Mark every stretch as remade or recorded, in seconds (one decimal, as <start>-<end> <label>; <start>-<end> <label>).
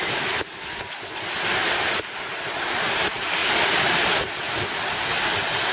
0.0-5.7 recorded